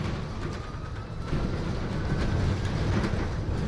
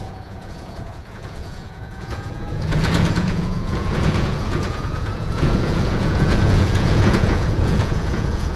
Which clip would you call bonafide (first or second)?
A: first